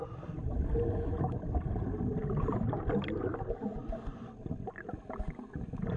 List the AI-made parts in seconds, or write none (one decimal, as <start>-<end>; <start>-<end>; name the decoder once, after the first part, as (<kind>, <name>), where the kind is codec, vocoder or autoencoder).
none